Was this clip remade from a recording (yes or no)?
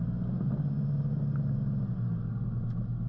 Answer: no